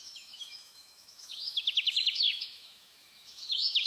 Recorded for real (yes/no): no